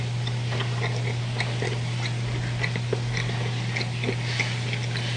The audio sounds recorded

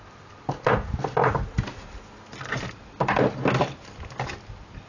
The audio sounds recorded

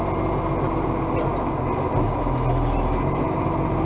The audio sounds recorded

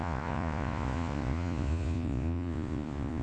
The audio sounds remade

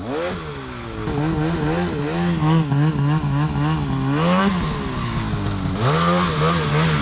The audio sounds recorded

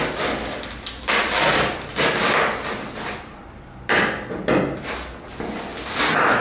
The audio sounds recorded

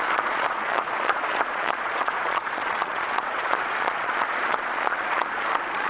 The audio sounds remade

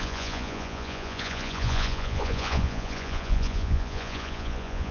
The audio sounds remade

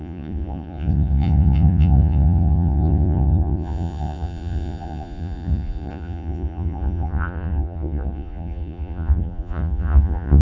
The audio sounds remade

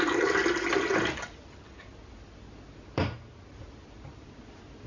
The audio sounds recorded